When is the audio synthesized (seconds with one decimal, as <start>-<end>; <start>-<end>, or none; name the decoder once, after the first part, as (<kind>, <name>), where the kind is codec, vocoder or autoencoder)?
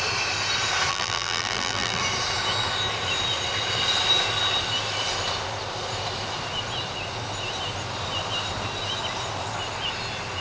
0.9-2.0 (vocoder, BigVGAN v2)